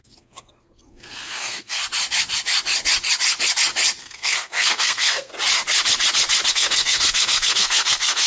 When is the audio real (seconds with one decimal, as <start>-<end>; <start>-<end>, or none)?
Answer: 1.8-4.0; 5.3-6.5